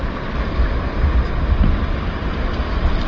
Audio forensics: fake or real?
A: real